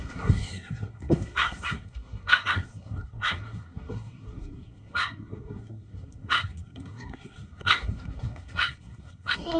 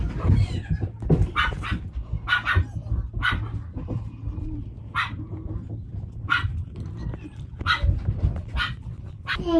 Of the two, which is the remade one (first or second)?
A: first